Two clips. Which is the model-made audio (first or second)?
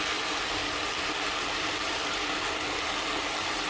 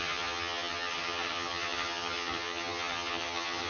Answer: second